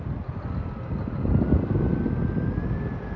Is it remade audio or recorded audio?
recorded